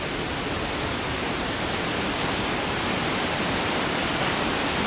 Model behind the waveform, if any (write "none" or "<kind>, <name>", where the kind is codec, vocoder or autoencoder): none